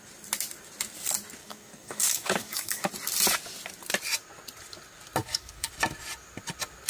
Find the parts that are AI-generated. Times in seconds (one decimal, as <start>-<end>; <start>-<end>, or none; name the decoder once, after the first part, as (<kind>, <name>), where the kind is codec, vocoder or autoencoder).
1.4-2.9 (codec, DAC); 5.2-5.7